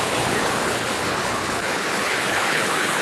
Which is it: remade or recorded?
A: remade